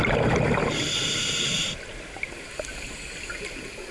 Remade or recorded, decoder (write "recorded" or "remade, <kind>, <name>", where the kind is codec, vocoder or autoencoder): recorded